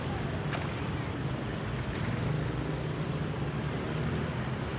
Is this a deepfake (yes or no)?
no